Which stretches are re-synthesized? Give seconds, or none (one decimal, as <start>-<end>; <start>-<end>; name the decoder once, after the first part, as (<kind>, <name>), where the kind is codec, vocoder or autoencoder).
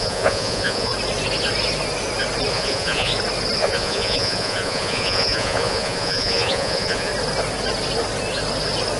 0.0-0.9 (vocoder, Vocos); 2.5-3.1; 3.6-7.1